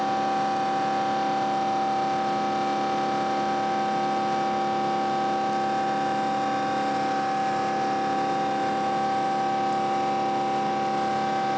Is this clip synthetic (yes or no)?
no